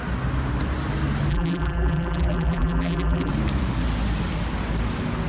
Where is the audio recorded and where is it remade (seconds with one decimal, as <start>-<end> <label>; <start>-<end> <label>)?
0.0-1.3 recorded; 1.3-3.3 remade; 3.3-5.3 recorded